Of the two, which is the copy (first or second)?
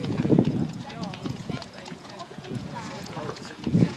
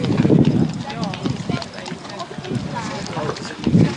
first